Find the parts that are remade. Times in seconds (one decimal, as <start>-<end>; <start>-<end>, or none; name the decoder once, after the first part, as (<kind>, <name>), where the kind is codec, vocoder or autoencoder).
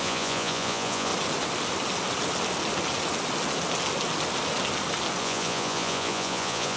0.0-1.1 (vocoder, Vocos); 5.2-6.8